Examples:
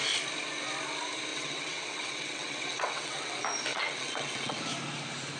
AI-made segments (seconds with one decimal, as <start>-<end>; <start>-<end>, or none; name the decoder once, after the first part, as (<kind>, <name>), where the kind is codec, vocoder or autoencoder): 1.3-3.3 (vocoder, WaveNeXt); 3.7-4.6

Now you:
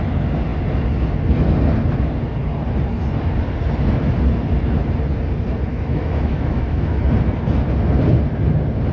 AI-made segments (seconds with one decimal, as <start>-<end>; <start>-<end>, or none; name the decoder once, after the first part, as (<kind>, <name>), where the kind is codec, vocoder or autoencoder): 5.7-7.0 (autoencoder, DAC-VAE)

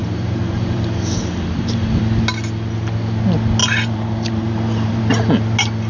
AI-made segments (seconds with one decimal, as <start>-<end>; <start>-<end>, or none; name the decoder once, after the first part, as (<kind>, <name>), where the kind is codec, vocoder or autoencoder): 0.0-2.0 (vocoder, BigVGAN v2); 3.6-5.0